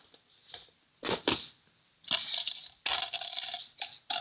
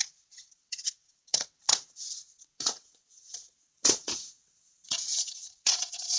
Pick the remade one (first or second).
second